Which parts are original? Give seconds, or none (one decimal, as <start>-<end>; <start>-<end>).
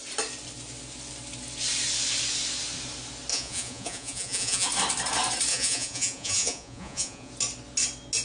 0.0-3.3; 4.7-5.5; 7.3-8.2